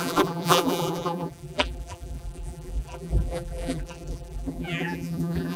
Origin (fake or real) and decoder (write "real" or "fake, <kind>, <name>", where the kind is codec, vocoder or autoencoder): fake, vocoder, BigVGAN v2